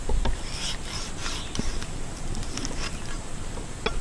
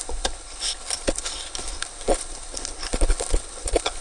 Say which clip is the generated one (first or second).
second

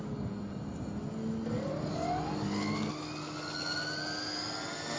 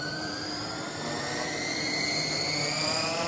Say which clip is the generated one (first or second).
second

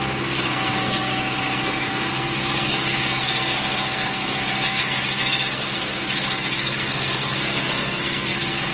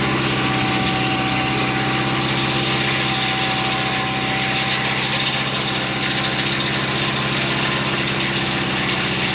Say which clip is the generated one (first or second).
first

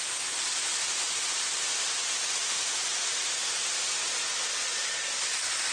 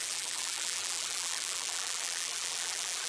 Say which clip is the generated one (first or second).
second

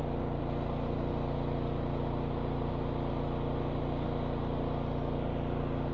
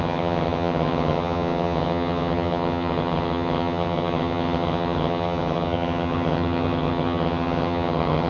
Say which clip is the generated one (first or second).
second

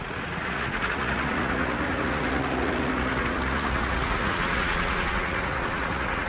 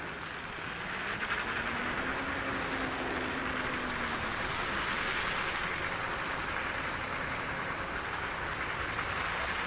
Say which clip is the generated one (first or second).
first